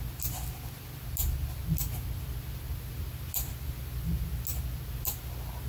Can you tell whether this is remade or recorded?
recorded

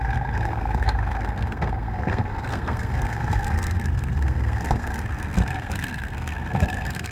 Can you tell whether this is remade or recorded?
remade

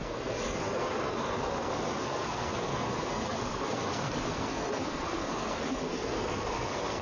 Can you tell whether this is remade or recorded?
remade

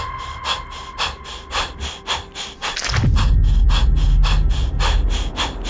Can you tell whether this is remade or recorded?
recorded